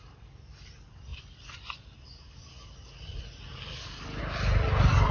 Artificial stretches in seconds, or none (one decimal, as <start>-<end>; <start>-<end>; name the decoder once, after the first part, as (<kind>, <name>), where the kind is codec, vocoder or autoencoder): none

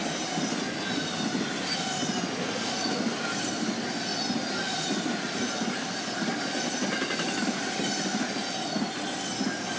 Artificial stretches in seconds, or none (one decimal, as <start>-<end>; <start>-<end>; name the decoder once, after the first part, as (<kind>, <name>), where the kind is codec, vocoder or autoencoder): none

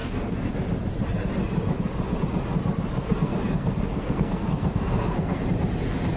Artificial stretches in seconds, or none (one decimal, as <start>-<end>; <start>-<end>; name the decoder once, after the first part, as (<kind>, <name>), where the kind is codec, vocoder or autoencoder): 0.0-0.5 (codec, SNAC); 3.0-5.4

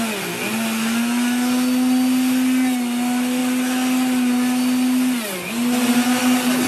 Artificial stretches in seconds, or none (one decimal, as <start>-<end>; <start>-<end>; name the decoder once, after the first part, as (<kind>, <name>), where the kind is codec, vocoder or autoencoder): none

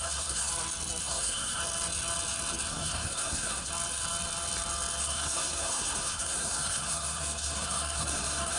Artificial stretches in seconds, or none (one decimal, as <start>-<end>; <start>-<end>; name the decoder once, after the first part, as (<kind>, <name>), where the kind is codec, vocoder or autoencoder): 0.0-0.5 (codec, SNAC); 1.0-1.6; 2.7-3.7; 5.0-8.6